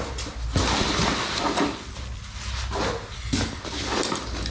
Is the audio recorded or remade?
recorded